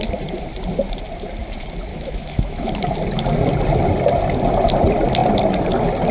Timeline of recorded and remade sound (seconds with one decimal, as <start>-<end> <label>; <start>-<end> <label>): 0.0-1.9 recorded; 1.9-2.7 remade; 2.7-6.1 recorded